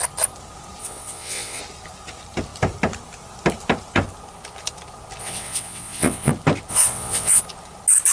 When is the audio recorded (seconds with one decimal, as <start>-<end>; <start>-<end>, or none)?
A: 0.0-0.8; 1.6-5.2; 6.3-6.7; 7.4-8.1